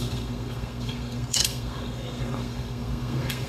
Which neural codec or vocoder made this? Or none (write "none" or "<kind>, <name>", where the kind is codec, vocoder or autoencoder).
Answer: codec, SNAC